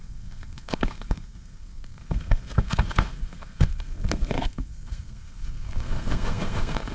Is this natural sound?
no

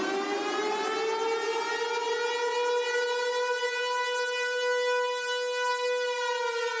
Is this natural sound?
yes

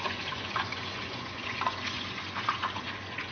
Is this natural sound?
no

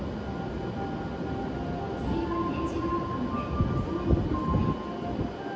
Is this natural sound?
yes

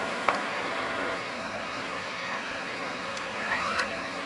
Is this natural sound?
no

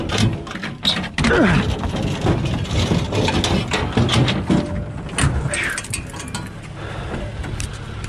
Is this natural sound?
yes